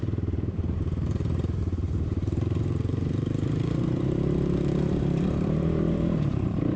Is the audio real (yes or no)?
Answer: no